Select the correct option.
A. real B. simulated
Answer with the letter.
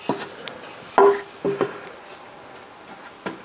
A